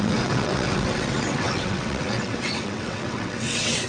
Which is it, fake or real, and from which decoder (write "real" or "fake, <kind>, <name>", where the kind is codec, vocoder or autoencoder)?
fake, vocoder, WaveNeXt